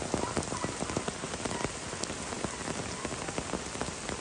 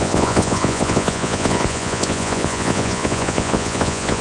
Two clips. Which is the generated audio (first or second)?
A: second